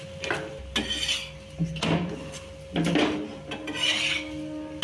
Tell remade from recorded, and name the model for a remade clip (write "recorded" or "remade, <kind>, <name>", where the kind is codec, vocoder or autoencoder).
recorded